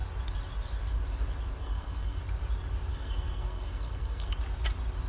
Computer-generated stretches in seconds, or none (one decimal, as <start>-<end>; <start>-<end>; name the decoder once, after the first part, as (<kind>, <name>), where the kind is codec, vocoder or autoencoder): 1.6-2.2 (codec, SNAC); 2.9-4.3